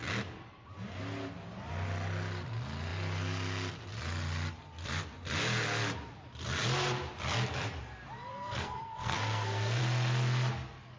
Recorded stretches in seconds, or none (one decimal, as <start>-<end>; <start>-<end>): 0.0-8.3; 9.8-11.0